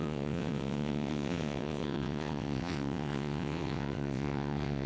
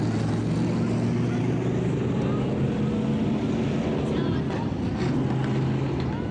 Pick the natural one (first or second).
second